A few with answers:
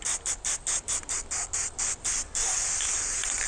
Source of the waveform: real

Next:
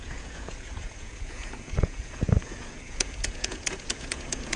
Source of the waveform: fake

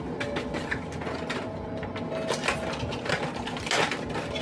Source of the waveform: real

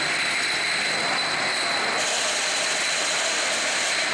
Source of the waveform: real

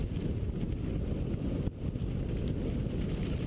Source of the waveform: real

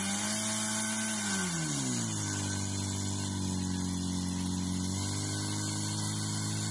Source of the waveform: real